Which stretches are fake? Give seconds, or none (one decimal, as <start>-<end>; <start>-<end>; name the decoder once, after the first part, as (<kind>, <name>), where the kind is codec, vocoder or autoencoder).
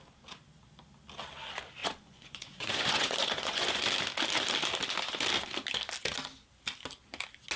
1.8-3.8 (vocoder, Vocos)